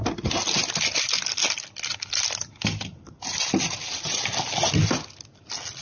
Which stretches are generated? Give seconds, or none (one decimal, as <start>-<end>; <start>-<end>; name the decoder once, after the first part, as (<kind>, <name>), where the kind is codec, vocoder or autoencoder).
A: none